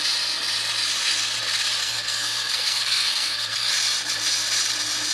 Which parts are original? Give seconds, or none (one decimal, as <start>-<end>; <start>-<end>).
0.0-1.8; 3.7-5.1